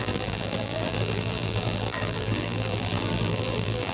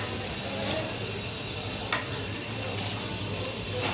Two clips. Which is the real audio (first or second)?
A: second